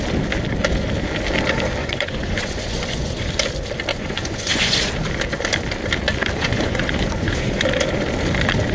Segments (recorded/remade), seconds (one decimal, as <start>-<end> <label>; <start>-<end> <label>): 0.0-1.8 recorded; 1.8-3.3 remade; 3.3-3.9 recorded; 3.9-4.9 remade; 4.9-6.4 recorded; 6.4-7.7 remade; 7.7-8.7 recorded